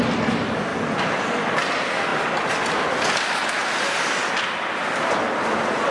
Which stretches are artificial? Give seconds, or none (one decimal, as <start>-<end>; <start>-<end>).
none